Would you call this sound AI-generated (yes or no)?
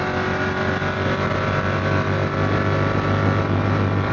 no